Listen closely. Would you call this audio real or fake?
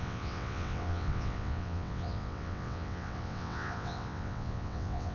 fake